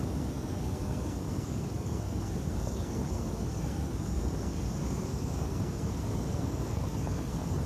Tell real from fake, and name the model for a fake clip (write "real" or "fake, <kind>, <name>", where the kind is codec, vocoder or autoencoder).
fake, codec, SNAC